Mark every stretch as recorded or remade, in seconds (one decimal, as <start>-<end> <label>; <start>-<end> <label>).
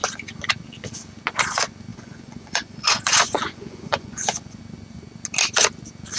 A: 0.0-1.9 recorded; 1.9-4.6 remade; 4.6-6.2 recorded